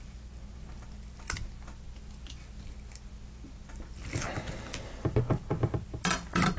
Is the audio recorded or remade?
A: recorded